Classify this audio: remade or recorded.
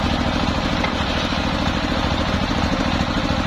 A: recorded